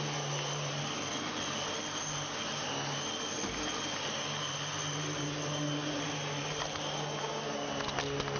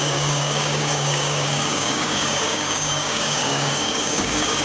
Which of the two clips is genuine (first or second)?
first